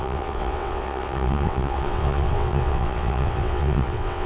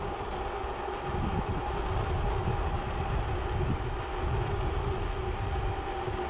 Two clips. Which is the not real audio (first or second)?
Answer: first